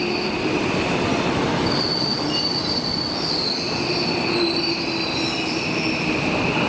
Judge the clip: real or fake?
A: real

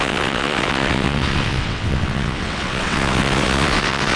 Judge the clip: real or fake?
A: fake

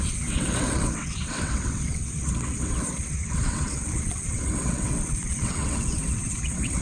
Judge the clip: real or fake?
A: fake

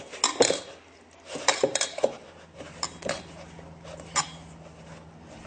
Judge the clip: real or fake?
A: real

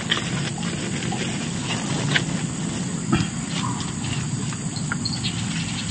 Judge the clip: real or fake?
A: real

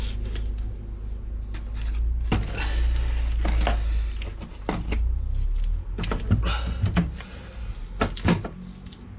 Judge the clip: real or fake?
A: real